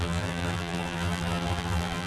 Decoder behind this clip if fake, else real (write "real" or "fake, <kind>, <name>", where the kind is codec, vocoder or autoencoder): fake, vocoder, BigVGAN v2